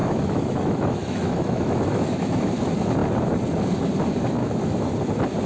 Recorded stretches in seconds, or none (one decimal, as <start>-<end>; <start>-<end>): 2.5-4.4; 4.9-5.5